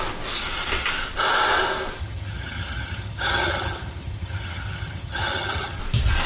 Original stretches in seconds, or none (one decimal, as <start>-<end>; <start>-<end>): 0.0-2.0; 5.8-6.3